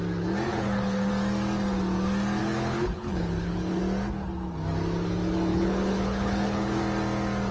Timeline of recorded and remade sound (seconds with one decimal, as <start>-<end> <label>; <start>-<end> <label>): 0.0-0.5 recorded; 0.5-1.1 remade; 1.1-2.4 recorded; 2.4-3.8 remade; 3.8-5.5 recorded; 5.5-6.8 remade; 6.8-7.5 recorded